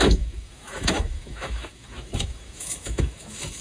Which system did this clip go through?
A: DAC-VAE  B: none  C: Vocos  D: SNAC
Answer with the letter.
A